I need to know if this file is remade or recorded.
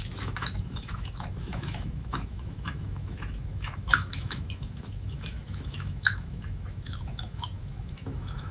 remade